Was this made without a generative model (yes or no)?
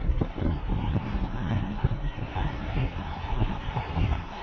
no